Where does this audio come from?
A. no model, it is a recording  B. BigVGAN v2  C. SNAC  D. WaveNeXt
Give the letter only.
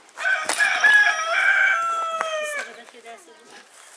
A